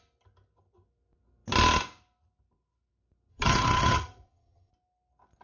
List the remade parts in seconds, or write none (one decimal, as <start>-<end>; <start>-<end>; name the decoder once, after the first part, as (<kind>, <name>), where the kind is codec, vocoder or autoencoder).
3.3-4.7 (vocoder, HiFi-GAN)